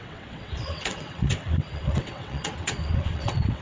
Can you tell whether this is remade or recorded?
remade